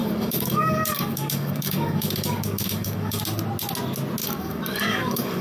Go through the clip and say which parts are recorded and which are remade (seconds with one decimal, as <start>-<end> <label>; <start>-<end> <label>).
0.0-3.2 remade; 3.2-4.2 recorded; 4.2-5.4 remade